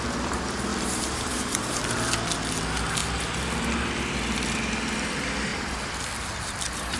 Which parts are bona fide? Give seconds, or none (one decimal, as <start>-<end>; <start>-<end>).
0.0-0.7; 1.8-5.5; 6.1-7.0